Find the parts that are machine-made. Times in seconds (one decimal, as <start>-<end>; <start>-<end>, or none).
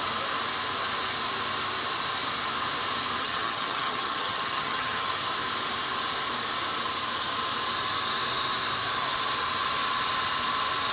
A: 3.2-5.1